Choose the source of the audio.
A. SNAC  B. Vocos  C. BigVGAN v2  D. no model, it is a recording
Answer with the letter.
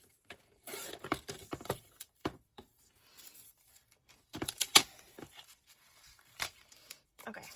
C